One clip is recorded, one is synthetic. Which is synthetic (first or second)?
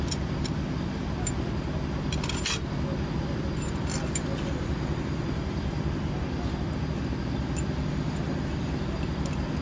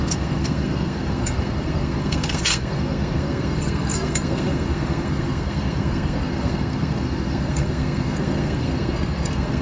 second